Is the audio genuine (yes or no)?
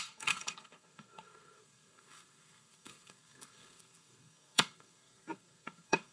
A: no